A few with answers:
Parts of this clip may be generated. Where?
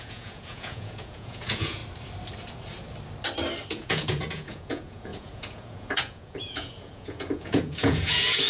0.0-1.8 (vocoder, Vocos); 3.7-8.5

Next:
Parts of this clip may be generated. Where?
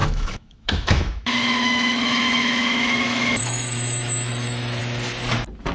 0.0-4.8 (autoencoder, DAC-VAE)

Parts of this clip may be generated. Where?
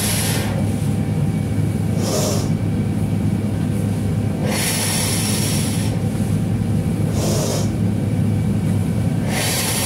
7.5-8.2 (vocoder, BigVGAN v2); 8.8-9.9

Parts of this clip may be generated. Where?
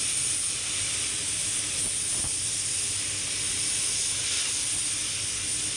none